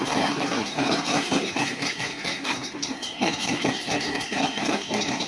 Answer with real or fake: fake